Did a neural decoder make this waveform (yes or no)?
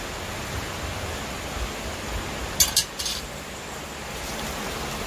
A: no